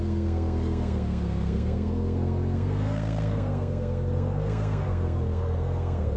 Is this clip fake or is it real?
fake